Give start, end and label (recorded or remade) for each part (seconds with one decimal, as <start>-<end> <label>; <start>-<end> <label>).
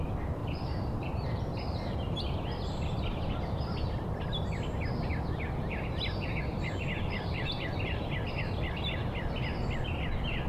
0.0-0.4 recorded; 0.4-3.2 remade; 3.2-6.5 recorded; 6.5-8.4 remade; 8.4-10.5 recorded